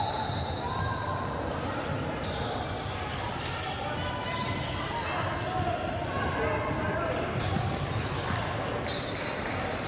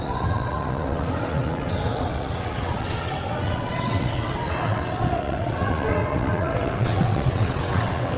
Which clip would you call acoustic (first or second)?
first